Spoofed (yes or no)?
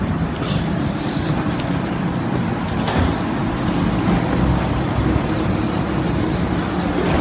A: no